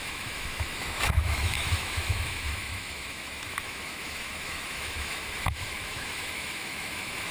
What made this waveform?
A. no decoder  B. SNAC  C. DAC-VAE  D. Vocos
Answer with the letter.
C